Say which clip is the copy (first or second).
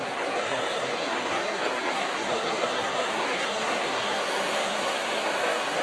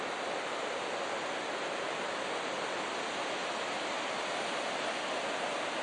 first